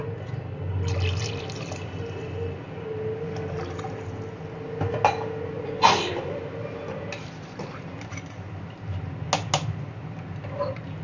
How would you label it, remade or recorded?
recorded